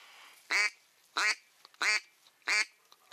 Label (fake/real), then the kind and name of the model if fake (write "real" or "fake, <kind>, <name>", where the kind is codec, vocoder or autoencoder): real